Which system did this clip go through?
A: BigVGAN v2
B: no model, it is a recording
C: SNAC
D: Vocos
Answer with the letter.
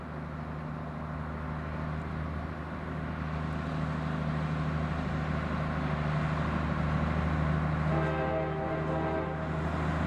B